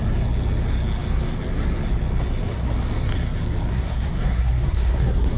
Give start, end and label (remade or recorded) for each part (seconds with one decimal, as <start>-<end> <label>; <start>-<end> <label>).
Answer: 0.0-3.7 recorded; 3.7-5.4 remade